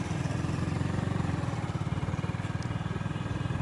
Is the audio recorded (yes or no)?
yes